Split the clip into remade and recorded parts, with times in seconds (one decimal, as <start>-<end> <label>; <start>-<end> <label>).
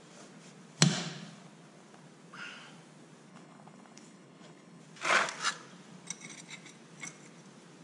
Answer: 0.0-3.3 recorded; 3.3-4.8 remade; 4.8-7.8 recorded